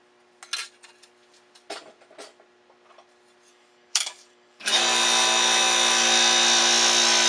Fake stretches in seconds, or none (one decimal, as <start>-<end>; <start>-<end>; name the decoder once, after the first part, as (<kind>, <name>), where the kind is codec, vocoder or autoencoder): 3.5-4.8 (codec, DAC)